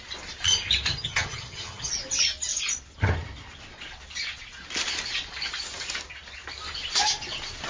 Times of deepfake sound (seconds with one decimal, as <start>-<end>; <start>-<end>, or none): 0.9-1.9